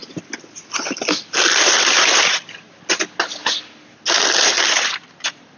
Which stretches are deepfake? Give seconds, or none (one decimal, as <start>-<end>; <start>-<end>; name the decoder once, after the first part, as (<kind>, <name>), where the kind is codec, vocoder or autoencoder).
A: none

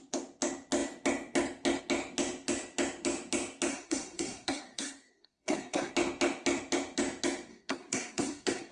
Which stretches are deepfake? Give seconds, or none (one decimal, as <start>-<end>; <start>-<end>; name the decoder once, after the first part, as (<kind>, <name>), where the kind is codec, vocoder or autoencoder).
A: 3.7-5.9 (codec, SNAC); 7.5-8.7